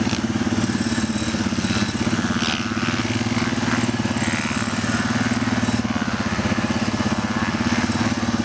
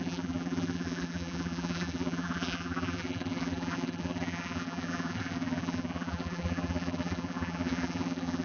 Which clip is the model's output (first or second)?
second